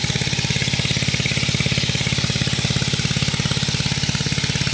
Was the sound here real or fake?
real